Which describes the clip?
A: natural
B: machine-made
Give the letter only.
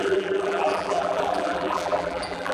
B